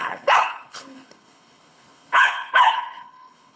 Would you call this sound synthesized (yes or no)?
yes